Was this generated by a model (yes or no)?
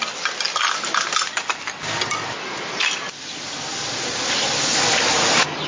no